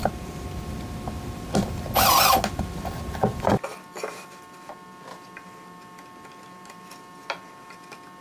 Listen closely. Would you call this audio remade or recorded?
recorded